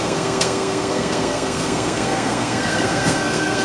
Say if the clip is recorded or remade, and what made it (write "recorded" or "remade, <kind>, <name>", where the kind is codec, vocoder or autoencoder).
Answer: remade, codec, SNAC